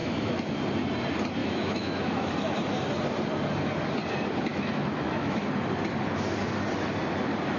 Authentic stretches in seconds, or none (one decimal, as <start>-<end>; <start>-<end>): 0.6-1.4; 2.3-4.5; 5.4-7.6